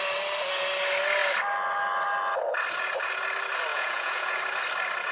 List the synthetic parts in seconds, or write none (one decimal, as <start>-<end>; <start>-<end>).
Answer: 3.7-4.4